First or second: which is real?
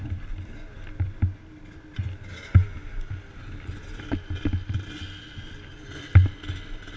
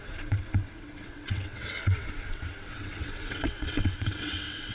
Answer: first